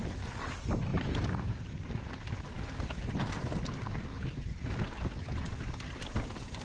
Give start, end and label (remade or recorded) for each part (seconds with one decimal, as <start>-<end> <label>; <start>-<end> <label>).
0.0-0.9 recorded; 0.9-2.1 remade; 2.1-4.1 recorded; 4.1-6.6 remade